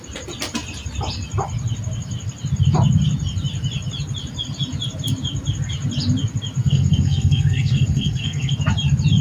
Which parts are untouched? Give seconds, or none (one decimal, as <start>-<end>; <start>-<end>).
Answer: 0.0-6.6; 8.5-9.2